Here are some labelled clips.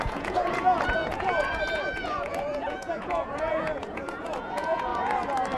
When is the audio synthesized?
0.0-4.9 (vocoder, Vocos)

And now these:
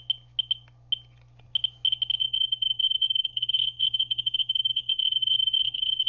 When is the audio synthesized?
2.2-6.1 (codec, SNAC)

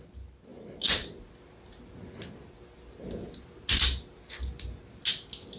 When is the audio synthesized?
none

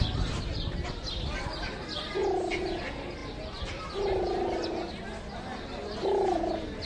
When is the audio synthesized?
2.2-2.8 (vocoder, BigVGAN v2)

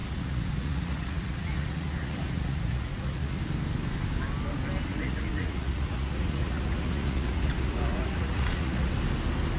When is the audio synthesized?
0.0-3.4 (vocoder, Vocos); 4.9-8.9

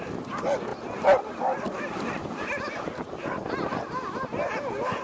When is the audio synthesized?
none

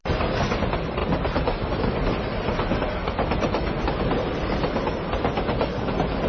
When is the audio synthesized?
none

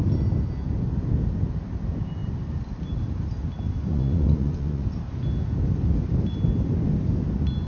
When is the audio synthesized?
3.9-4.9 (vocoder, Vocos)